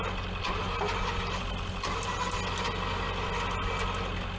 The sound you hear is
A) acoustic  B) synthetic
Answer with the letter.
A